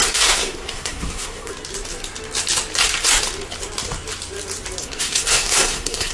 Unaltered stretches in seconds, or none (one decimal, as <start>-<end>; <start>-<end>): 1.5-4.8